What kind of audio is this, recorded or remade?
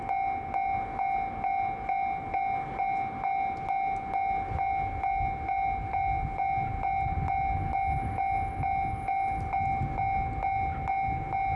recorded